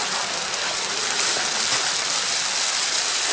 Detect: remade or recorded recorded